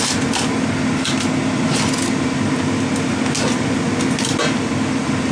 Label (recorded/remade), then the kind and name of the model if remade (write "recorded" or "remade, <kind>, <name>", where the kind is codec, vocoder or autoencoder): recorded